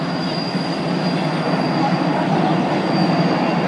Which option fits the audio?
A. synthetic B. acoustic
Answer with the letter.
B